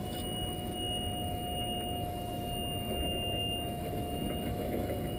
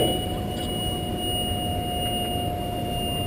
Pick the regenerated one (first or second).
first